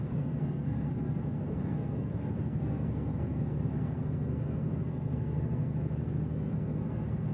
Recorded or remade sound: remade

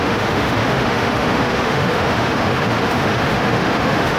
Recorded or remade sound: remade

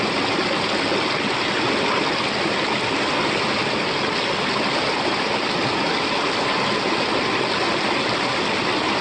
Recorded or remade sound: recorded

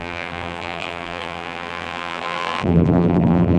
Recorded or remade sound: remade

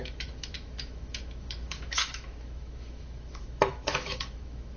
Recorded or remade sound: remade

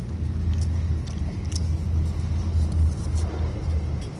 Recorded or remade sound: recorded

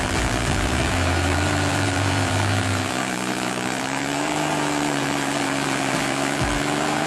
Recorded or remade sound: remade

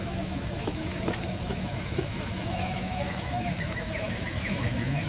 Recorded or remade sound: remade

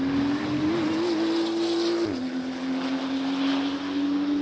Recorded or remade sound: recorded